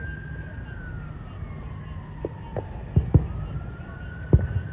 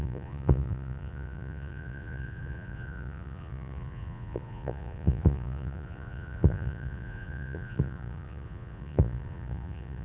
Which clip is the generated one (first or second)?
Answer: second